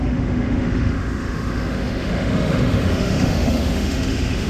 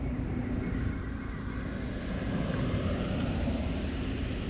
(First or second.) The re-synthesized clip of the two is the first